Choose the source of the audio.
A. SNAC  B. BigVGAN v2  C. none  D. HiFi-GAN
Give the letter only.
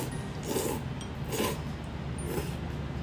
C